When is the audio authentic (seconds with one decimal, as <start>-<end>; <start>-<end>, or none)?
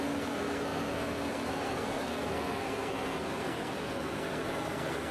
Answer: none